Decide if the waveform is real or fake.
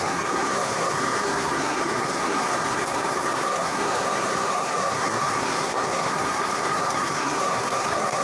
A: fake